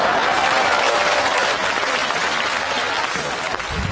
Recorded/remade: recorded